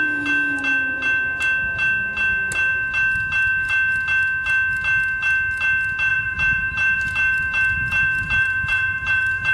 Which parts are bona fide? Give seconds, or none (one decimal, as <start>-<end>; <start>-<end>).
0.0-6.1